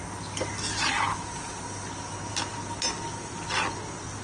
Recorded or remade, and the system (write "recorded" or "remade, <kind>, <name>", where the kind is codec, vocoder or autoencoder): recorded